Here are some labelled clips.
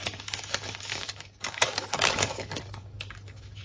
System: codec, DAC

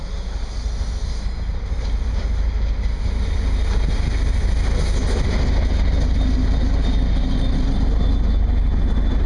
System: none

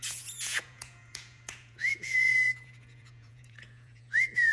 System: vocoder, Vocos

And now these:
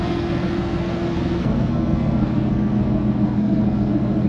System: codec, SNAC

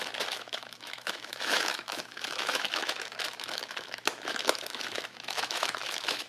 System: autoencoder, DAC-VAE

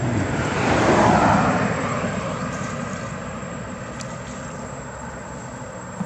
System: vocoder, BigVGAN v2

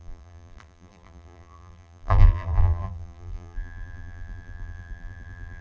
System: vocoder, BigVGAN v2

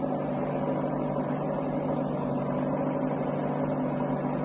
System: none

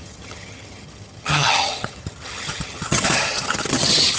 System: vocoder, HiFi-GAN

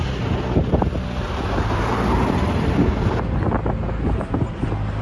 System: none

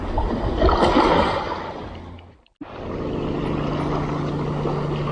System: none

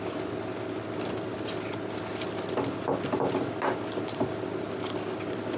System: none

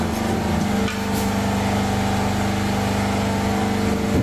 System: none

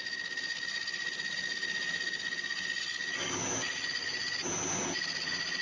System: none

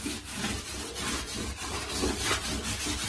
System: none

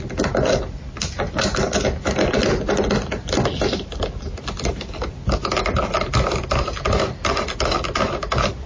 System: none